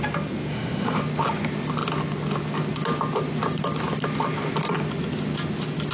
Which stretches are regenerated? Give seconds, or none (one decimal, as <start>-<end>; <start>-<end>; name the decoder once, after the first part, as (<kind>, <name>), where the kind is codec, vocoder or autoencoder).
0.5-1.0 (autoencoder, DAC-VAE)